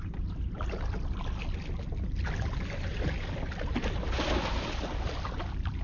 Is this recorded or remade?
recorded